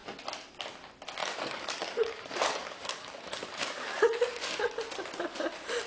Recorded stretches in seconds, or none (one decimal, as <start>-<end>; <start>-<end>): 0.0-1.2; 4.7-5.9